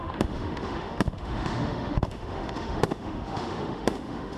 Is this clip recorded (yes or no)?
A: no